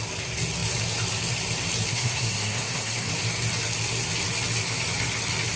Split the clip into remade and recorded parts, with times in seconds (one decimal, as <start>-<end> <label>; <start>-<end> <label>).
0.0-1.9 recorded; 1.9-3.1 remade; 3.1-5.6 recorded